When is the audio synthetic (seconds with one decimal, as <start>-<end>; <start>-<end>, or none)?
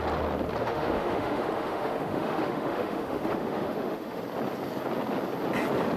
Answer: 0.6-4.2